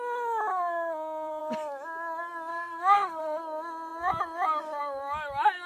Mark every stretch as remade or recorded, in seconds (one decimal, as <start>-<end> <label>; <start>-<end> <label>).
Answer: 0.0-0.5 recorded; 0.5-1.4 remade; 1.4-2.5 recorded; 2.5-3.4 remade; 3.4-5.7 recorded